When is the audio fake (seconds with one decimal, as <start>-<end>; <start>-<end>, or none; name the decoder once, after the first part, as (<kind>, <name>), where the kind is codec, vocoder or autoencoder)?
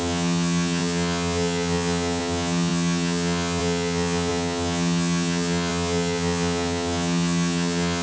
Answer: 0.0-8.0 (vocoder, HiFi-GAN)